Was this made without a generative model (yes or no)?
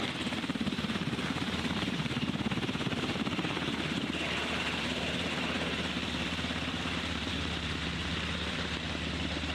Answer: no